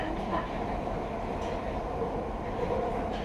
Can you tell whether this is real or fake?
real